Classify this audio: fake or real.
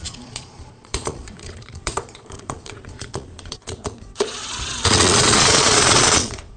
fake